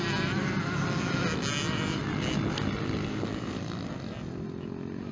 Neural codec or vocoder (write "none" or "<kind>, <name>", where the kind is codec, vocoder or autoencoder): none